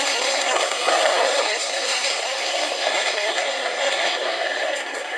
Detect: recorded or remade remade